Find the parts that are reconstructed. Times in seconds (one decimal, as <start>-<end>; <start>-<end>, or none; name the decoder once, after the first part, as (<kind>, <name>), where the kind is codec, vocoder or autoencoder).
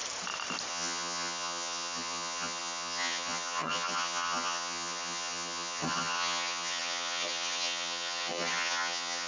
0.7-9.3 (vocoder, HiFi-GAN)